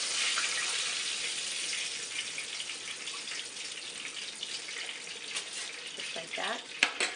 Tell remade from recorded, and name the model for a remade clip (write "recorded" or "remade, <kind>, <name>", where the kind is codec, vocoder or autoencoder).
recorded